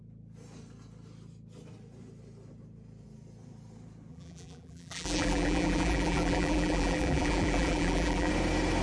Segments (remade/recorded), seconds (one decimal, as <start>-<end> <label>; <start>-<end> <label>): 0.0-4.1 recorded; 4.1-8.3 remade; 8.3-8.8 recorded

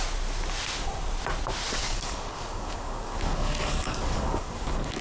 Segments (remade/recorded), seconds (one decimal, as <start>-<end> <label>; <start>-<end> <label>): 0.0-1.8 recorded; 1.8-5.0 remade